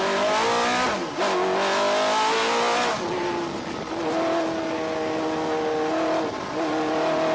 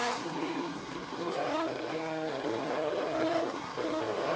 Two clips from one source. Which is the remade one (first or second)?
second